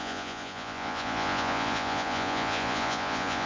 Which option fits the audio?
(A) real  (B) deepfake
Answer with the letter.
B